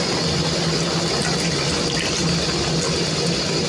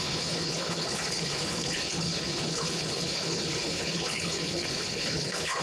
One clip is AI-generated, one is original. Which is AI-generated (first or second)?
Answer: second